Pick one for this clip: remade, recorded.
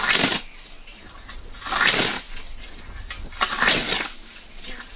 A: recorded